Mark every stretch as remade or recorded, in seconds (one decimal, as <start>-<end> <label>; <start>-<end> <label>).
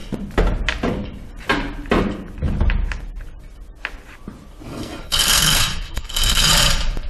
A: 0.0-4.7 recorded; 4.7-6.5 remade; 6.5-7.1 recorded